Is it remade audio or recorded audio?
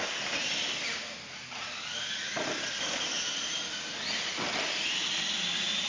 recorded